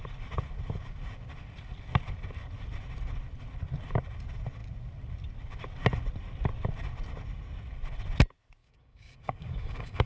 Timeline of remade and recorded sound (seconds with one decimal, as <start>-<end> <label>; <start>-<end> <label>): 0.0-8.6 recorded; 8.6-10.1 remade